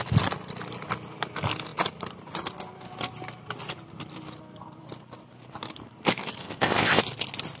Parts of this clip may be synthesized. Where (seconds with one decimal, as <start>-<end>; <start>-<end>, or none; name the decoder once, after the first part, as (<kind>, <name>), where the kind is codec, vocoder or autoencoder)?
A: 6.4-7.0 (codec, ZipCodec)